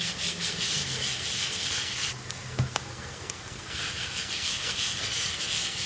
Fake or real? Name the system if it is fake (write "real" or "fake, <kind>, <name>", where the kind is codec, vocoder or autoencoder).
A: fake, codec, SNAC